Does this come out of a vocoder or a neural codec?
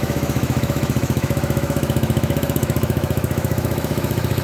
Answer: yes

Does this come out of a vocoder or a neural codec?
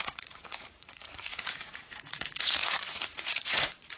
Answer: yes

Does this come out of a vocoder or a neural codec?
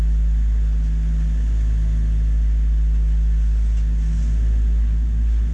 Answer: no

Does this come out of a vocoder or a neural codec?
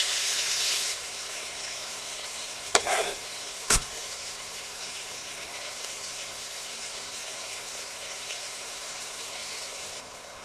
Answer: yes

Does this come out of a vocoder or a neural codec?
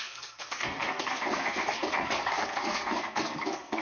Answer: yes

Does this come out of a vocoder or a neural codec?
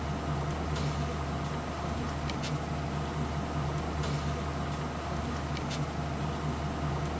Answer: no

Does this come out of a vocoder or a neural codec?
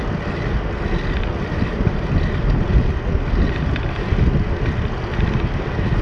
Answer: no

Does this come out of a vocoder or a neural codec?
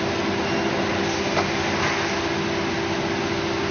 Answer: no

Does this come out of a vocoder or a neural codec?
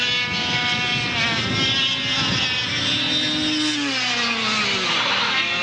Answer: no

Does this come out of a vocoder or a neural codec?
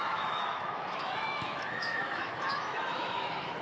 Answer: yes